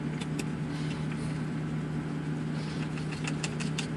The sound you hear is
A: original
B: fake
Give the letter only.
A